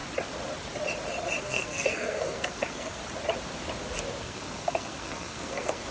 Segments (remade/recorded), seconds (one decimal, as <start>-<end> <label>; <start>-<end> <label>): 0.0-1.4 recorded; 1.4-3.0 remade; 3.0-4.2 recorded; 4.2-5.9 remade